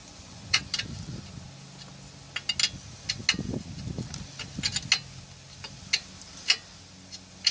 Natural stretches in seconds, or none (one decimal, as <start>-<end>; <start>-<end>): 0.6-7.5